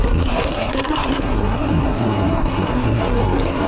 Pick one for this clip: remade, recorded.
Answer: remade